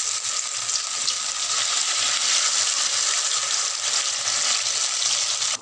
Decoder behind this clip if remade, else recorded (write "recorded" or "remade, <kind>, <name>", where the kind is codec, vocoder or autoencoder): recorded